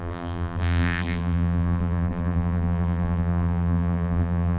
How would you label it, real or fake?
fake